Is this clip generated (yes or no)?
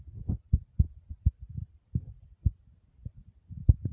no